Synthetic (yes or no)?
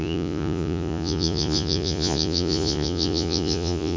yes